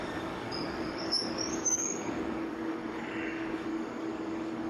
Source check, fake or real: fake